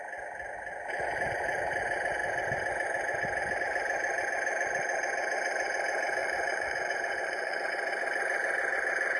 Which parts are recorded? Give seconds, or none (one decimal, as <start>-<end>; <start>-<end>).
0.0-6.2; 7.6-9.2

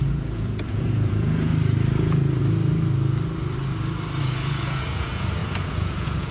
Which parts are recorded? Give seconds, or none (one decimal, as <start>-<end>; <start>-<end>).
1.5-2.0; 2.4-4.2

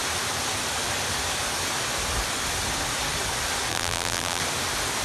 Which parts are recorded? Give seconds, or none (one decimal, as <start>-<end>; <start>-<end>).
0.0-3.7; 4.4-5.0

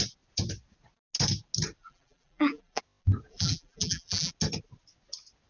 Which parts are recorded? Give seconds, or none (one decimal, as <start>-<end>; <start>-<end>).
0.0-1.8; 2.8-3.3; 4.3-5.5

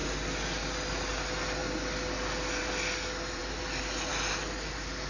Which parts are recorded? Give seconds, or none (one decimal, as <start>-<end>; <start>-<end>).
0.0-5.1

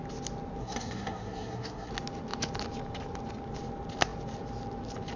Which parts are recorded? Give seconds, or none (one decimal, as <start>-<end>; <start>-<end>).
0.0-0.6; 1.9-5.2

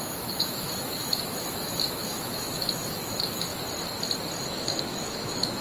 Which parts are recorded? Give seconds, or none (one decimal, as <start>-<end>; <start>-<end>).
3.5-4.4

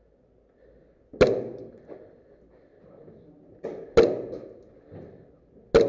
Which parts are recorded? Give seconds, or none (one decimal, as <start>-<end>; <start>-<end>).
0.0-5.9